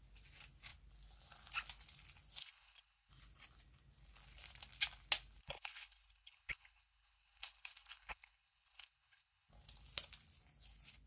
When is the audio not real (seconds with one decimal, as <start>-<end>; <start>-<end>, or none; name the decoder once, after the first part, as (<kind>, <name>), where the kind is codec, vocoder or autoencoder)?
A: 2.4-3.1 (codec, HILCodec); 5.4-9.5

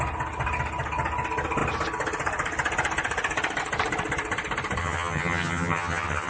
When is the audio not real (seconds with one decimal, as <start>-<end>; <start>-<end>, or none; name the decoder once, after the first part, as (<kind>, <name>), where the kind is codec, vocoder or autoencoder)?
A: 4.8-6.3 (vocoder, HiFi-GAN)

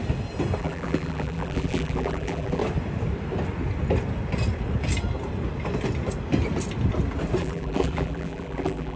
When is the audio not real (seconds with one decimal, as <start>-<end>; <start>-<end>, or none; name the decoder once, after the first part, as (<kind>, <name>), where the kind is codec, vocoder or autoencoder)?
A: 0.6-2.6 (vocoder, BigVGAN v2); 7.4-9.0

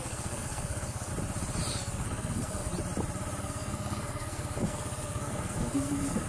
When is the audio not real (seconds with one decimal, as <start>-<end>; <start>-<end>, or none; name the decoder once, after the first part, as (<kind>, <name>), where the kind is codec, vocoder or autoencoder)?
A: 0.0-1.1 (codec, SNAC); 1.7-2.7; 3.4-6.3

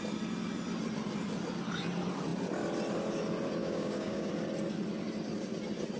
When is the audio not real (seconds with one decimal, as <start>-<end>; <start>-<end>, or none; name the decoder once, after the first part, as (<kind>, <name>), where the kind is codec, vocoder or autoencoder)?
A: 3.6-4.3 (codec, DAC)

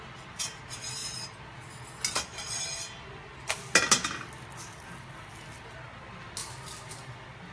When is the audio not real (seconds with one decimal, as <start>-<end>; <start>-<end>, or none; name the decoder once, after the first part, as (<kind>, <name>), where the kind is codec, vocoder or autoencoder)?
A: none